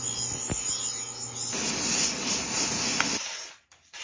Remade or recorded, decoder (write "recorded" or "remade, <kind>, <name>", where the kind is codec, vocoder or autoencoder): recorded